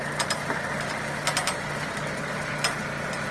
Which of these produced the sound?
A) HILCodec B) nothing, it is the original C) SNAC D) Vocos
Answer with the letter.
B